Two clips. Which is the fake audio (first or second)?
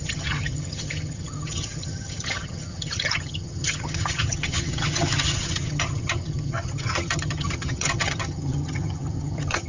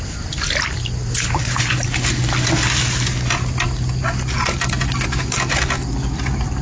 first